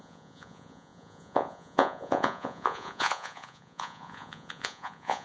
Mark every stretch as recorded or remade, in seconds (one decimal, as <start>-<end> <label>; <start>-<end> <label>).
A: 0.0-5.2 remade